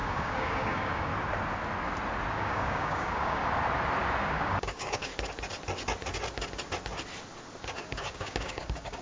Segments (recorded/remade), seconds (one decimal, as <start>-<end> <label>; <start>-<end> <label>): 0.0-1.1 remade; 1.1-2.3 recorded; 2.3-3.4 remade; 3.4-4.2 recorded; 4.2-5.1 remade; 5.1-7.6 recorded; 7.6-9.0 remade